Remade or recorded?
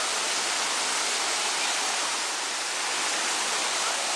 recorded